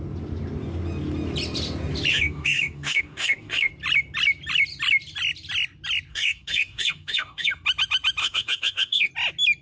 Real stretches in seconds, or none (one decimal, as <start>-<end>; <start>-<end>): 0.0-2.1; 3.7-6.1; 7.5-8.2; 9.1-9.6